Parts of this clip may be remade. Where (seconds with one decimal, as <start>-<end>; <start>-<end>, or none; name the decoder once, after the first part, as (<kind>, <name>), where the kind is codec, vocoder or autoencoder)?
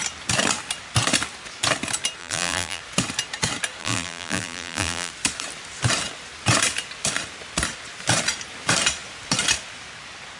2.2-2.8 (vocoder, BigVGAN v2); 3.8-5.1